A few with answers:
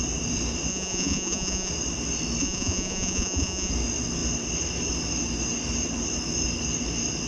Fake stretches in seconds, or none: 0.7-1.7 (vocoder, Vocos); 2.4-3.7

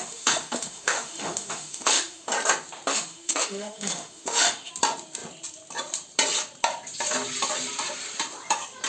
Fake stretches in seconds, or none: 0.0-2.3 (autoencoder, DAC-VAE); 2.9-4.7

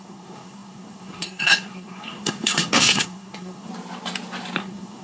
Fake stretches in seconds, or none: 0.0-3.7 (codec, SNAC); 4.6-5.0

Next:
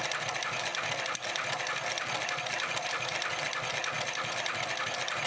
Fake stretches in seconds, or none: none

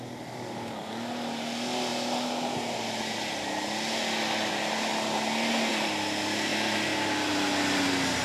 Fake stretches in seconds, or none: 0.0-4.9 (vocoder, BigVGAN v2); 5.7-6.5; 7.3-8.2

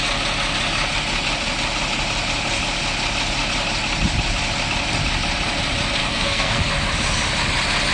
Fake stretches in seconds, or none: 6.0-6.7 (codec, SNAC)

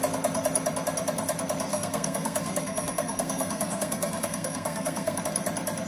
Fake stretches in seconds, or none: 1.7-5.2 (codec, SNAC)